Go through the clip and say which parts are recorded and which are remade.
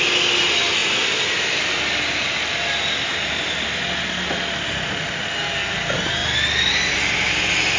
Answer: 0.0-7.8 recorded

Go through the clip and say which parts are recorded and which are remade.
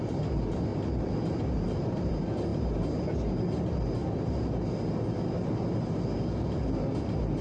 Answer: 0.0-0.7 recorded; 0.7-2.1 remade; 2.1-7.4 recorded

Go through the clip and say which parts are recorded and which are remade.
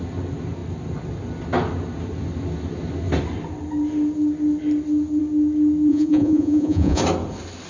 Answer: 0.0-5.9 recorded; 5.9-7.0 remade; 7.0-7.7 recorded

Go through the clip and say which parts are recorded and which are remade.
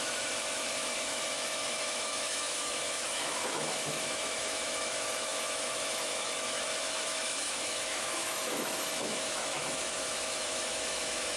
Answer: 0.0-11.4 remade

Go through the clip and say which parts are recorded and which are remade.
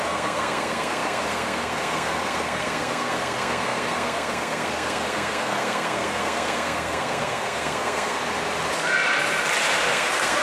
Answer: 0.0-8.2 remade; 8.2-9.9 recorded; 9.9-10.4 remade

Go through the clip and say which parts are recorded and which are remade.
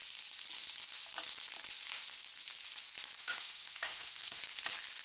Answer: 0.0-3.2 recorded; 3.2-4.4 remade; 4.4-5.0 recorded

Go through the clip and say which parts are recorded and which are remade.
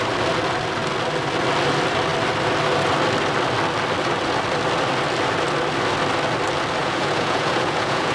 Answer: 0.0-6.8 recorded; 6.8-8.1 remade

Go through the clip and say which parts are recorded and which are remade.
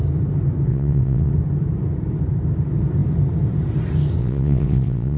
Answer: 0.0-0.7 recorded; 0.7-1.3 remade; 1.3-4.2 recorded; 4.2-5.2 remade